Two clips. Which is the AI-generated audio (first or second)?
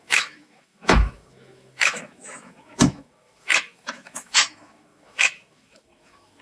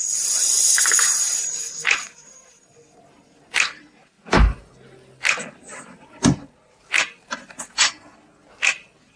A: first